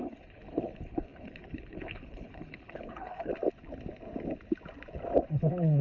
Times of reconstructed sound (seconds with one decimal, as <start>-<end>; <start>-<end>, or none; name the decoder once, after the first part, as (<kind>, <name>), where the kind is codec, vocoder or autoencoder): 0.0-3.3 (codec, HILCodec); 5.3-5.8